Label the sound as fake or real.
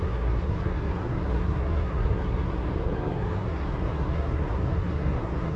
fake